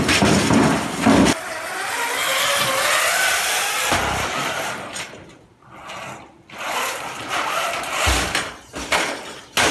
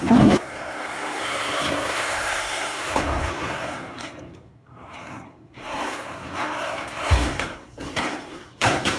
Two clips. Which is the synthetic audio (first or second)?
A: second